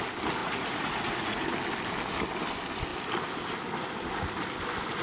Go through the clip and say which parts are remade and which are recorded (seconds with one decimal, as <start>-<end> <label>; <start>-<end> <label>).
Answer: 0.0-0.4 recorded; 0.4-1.5 remade; 1.5-5.0 recorded